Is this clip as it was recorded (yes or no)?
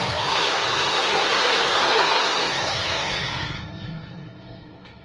no